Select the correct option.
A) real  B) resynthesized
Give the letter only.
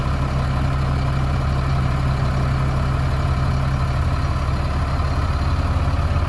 A